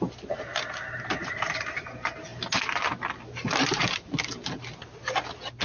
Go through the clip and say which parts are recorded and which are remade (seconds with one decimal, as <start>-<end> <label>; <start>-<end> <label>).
0.0-1.2 recorded; 1.2-1.8 remade; 1.8-5.6 recorded